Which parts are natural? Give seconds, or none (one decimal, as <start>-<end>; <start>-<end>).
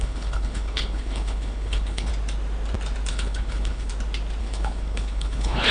2.1-3.1; 3.9-4.4